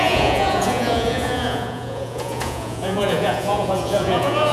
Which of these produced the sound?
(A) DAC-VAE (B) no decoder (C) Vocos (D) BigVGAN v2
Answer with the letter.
C